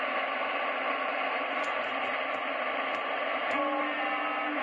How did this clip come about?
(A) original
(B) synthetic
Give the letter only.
A